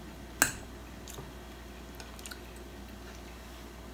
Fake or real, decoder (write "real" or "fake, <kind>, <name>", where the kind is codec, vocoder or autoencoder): real